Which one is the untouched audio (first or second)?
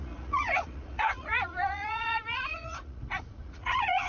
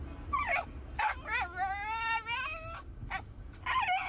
second